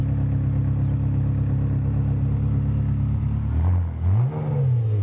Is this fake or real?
real